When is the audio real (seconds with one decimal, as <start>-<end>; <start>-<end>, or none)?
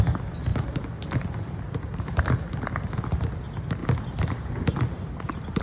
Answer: 0.0-0.5; 2.5-3.8